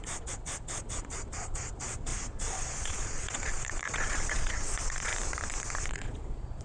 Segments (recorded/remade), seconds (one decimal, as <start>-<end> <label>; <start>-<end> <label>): 0.0-5.1 remade; 5.1-5.9 recorded; 5.9-6.6 remade

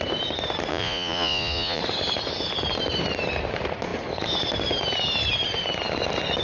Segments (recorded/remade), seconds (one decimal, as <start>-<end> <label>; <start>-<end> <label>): 0.0-0.7 recorded; 0.7-1.8 remade; 1.8-6.4 recorded

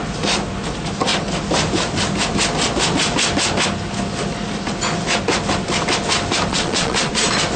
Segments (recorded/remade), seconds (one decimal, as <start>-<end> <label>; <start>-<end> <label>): 0.0-6.5 recorded; 6.5-7.1 remade; 7.1-7.6 recorded

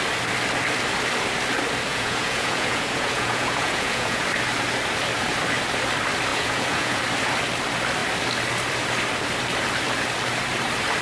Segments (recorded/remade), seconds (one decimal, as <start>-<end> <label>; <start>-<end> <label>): 0.0-1.9 recorded; 1.9-4.2 remade; 4.2-6.3 recorded; 6.3-7.0 remade; 7.0-11.0 recorded

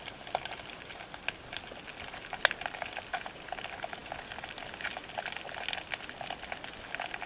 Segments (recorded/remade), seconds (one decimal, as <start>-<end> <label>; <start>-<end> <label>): 0.0-7.3 recorded

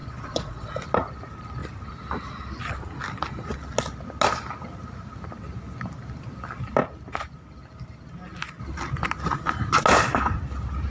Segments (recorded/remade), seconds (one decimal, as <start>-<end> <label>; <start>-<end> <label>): 0.0-0.7 remade; 0.7-10.9 recorded

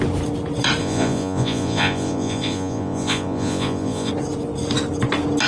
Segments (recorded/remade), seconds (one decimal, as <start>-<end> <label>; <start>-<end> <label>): 0.0-0.8 recorded; 0.8-4.1 remade; 4.1-5.5 recorded

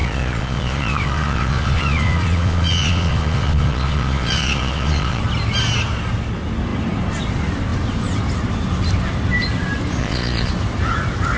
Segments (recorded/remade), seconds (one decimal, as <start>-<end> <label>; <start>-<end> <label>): 0.0-5.2 remade; 5.2-10.0 recorded; 10.0-10.5 remade; 10.5-11.4 recorded